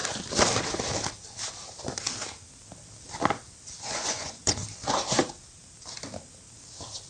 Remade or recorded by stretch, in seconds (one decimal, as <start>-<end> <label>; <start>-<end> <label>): 0.0-3.8 recorded; 3.8-4.6 remade; 4.6-7.1 recorded